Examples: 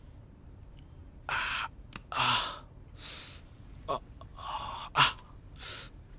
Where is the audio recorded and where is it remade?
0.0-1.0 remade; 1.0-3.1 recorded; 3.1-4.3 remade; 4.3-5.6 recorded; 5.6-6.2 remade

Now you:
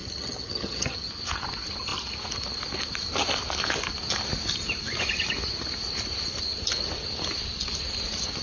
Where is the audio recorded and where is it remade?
0.0-1.1 remade; 1.1-8.4 recorded

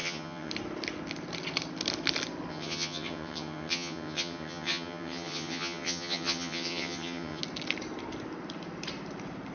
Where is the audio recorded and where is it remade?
0.0-0.5 remade; 0.5-2.5 recorded; 2.5-7.4 remade; 7.4-9.5 recorded

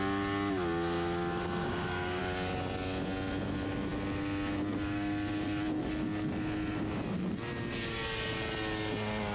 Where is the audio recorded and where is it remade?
0.0-1.6 recorded; 1.6-2.2 remade; 2.2-9.3 recorded

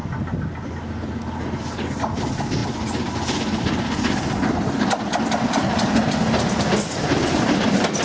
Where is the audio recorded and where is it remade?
0.0-8.0 recorded

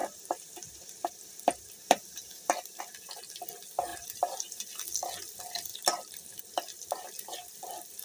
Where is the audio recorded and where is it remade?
0.0-2.8 remade; 2.8-3.9 recorded; 3.9-4.6 remade; 4.6-5.7 recorded; 5.7-6.4 remade; 6.4-8.0 recorded